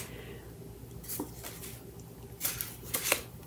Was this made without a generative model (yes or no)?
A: yes